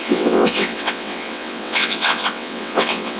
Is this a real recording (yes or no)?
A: no